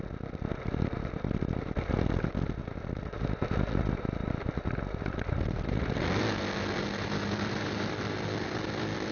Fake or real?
real